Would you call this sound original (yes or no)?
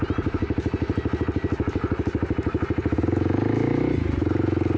yes